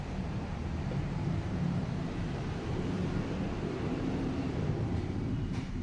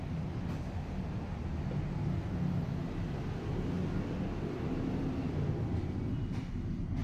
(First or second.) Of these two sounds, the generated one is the first